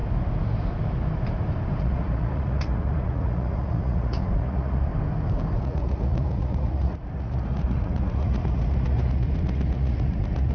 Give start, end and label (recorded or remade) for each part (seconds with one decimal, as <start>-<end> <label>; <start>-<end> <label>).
0.0-1.8 recorded; 1.8-4.9 remade; 4.9-5.6 recorded; 5.6-10.5 remade